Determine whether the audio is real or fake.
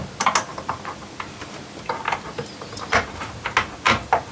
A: real